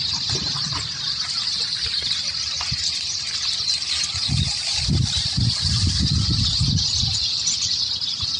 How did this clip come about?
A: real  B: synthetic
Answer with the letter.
A